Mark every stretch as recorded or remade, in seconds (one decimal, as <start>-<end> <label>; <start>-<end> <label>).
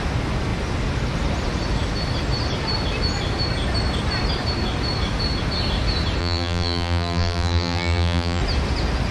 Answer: 0.0-6.2 recorded; 6.2-8.4 remade; 8.4-9.1 recorded